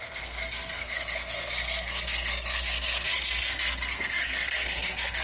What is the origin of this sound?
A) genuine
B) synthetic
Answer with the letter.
B